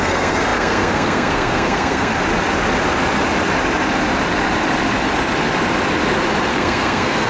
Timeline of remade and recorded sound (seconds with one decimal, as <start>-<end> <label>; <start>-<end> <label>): 0.0-2.1 remade; 2.1-6.5 recorded; 6.5-7.3 remade